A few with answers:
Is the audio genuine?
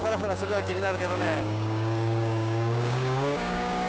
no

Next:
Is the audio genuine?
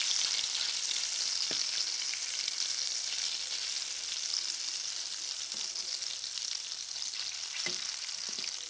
yes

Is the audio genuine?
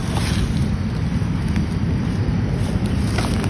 yes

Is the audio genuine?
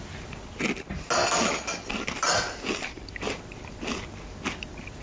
yes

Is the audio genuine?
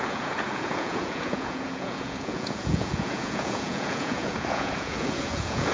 no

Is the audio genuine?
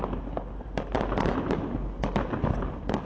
yes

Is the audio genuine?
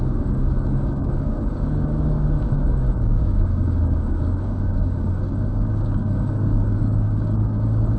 no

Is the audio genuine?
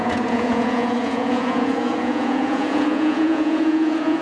no